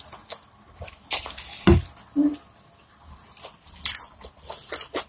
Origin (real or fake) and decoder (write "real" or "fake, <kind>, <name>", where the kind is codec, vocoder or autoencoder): real